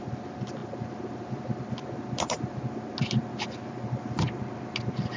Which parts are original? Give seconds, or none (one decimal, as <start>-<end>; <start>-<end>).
0.0-5.2